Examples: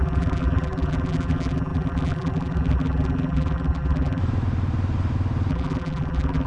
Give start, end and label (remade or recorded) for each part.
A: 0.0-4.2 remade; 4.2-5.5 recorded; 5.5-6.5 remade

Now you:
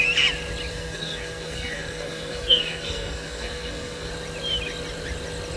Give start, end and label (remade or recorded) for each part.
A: 0.0-0.7 recorded; 0.7-4.1 remade; 4.1-5.6 recorded

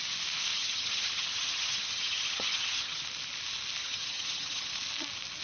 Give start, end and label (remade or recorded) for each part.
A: 0.0-0.5 recorded; 0.5-3.0 remade; 3.0-3.8 recorded; 3.8-4.7 remade; 4.7-5.4 recorded